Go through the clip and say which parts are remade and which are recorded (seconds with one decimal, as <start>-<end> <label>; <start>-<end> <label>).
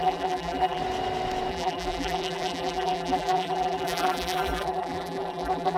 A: 0.0-0.8 remade; 0.8-1.5 recorded; 1.5-5.8 remade